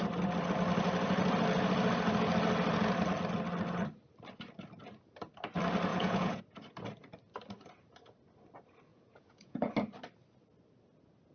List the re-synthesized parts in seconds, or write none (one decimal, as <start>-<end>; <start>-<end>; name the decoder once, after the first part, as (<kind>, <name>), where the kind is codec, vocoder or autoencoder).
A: 5.9-6.4 (vocoder, Vocos); 8.9-9.7